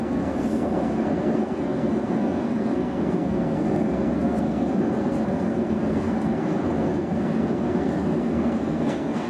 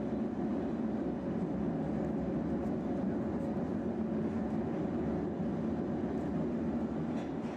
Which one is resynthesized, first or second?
first